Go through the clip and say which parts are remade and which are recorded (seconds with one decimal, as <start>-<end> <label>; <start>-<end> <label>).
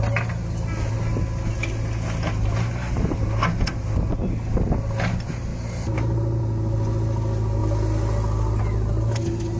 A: 0.0-2.8 recorded; 2.8-3.9 remade; 3.9-5.5 recorded; 5.5-6.4 remade; 6.4-9.6 recorded